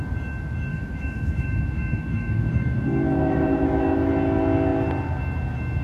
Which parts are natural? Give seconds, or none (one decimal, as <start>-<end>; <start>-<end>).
0.0-0.7; 4.1-5.8